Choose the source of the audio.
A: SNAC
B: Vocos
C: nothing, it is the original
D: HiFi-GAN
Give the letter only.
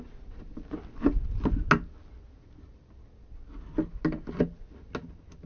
C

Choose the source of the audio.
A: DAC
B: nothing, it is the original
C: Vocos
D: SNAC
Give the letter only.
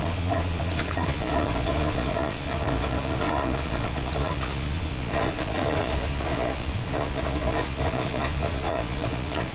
C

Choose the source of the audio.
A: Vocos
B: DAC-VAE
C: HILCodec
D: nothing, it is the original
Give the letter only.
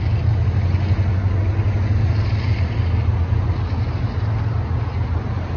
D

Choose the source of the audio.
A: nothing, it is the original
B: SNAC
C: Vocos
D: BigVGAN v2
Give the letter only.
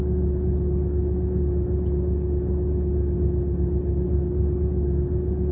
A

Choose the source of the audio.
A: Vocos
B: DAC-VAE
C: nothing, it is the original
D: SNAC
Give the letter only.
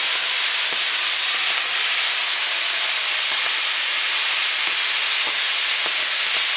C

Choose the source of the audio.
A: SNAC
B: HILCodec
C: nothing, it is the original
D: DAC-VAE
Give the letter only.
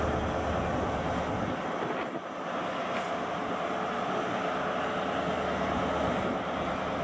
C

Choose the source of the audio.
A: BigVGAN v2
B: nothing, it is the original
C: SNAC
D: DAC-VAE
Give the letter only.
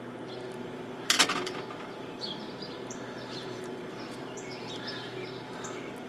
A